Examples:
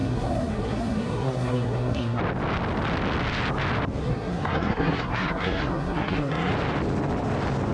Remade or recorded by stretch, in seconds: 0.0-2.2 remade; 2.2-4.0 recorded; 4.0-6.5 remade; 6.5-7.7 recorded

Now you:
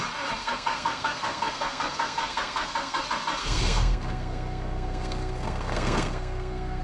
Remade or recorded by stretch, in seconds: 0.0-0.4 recorded; 0.4-3.0 remade; 3.0-3.4 recorded; 3.4-6.8 remade

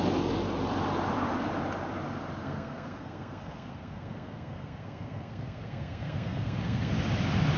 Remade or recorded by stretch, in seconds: 0.0-2.4 recorded; 2.4-6.9 remade; 6.9-7.6 recorded

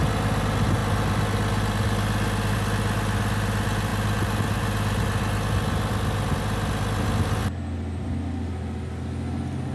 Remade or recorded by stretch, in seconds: 0.0-9.7 recorded

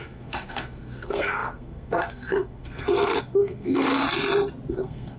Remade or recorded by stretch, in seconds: 0.0-3.9 remade; 3.9-4.7 recorded; 4.7-5.2 remade

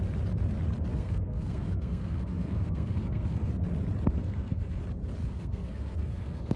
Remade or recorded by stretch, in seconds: 0.0-0.9 recorded; 0.9-3.5 remade; 3.5-4.2 recorded; 4.2-4.8 remade; 4.8-5.2 recorded; 5.2-6.6 remade

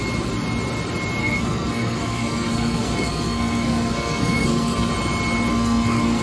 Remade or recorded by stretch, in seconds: 0.0-1.2 recorded; 1.2-4.9 remade; 4.9-5.5 recorded; 5.5-6.2 remade